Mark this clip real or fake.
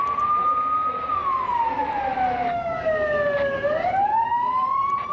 real